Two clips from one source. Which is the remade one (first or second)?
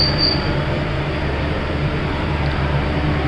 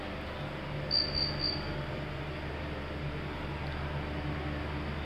first